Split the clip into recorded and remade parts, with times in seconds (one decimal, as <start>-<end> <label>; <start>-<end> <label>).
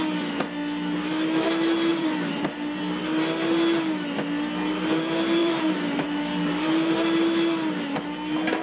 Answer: 0.0-1.9 recorded; 1.9-2.8 remade; 2.8-5.4 recorded; 5.4-6.9 remade; 6.9-8.6 recorded